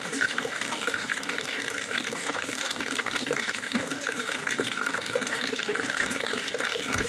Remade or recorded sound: remade